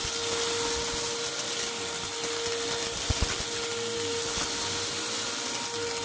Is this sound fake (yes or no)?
no